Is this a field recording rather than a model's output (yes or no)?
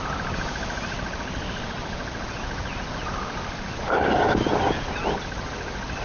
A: yes